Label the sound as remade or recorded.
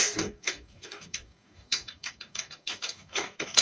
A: remade